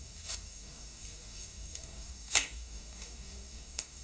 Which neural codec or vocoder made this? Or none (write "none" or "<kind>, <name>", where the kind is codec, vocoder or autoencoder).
codec, DAC